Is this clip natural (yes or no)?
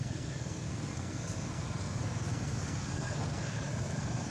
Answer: no